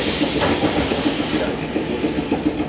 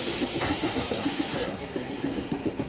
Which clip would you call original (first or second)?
first